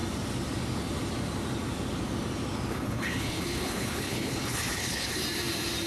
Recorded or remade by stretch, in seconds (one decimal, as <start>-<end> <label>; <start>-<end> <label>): 0.0-2.7 recorded; 2.7-5.2 remade; 5.2-5.9 recorded